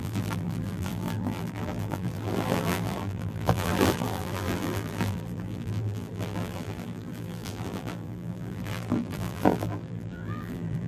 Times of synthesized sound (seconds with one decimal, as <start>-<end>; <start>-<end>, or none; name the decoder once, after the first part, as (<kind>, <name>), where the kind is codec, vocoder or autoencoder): 0.0-10.9 (vocoder, BigVGAN v2)